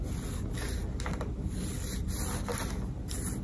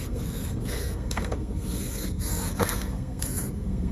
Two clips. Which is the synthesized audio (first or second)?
second